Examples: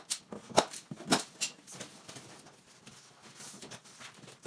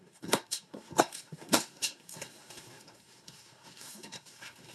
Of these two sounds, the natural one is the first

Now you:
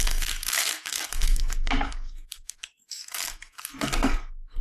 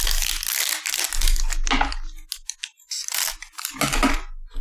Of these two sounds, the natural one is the second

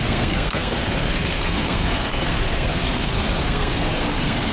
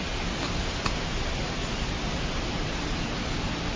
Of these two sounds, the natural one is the second